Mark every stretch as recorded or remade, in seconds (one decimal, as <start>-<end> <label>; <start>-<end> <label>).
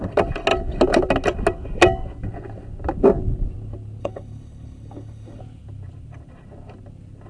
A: 0.0-4.0 recorded; 4.0-5.4 remade; 5.4-7.3 recorded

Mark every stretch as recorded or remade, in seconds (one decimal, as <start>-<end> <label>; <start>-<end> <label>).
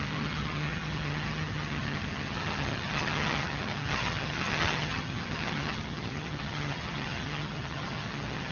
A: 0.0-8.5 remade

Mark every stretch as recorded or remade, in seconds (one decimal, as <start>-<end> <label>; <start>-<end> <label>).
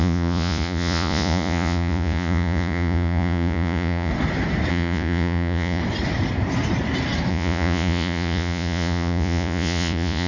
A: 0.0-4.1 remade; 4.1-4.7 recorded; 4.7-5.8 remade; 5.8-7.3 recorded; 7.3-10.3 remade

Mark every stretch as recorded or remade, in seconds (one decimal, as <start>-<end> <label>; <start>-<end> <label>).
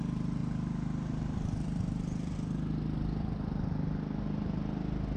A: 0.0-5.2 recorded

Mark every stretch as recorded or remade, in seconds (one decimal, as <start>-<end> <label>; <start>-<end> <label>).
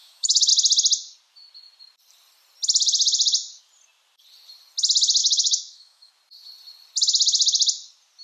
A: 0.0-0.5 remade; 0.5-5.2 recorded; 5.2-6.1 remade; 6.1-8.2 recorded